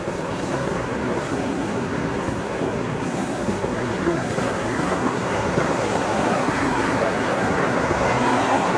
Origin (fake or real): fake